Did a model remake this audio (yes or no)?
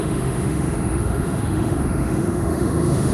yes